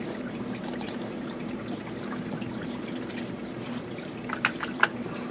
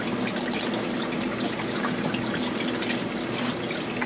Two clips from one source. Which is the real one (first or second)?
second